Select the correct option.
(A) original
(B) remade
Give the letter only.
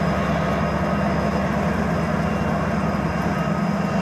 A